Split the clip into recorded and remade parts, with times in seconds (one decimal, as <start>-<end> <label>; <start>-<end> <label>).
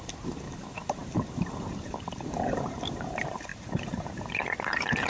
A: 0.0-5.1 remade